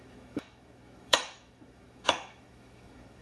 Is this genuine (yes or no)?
no